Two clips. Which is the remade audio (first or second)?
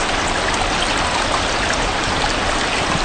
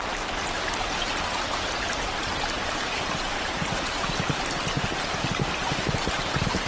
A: second